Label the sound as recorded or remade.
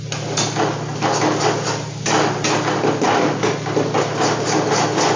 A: recorded